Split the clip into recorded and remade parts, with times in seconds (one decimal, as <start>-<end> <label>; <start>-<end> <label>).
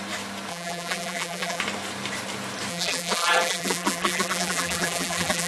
0.0-0.5 recorded; 0.5-1.6 remade; 1.6-2.7 recorded; 2.7-5.5 remade